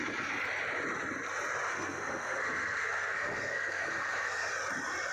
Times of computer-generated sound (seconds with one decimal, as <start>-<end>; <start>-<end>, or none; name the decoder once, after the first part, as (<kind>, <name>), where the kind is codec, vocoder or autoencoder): 1.7-4.5 (codec, SNAC)